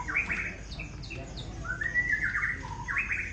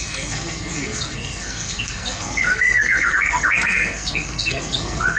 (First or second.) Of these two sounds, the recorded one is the first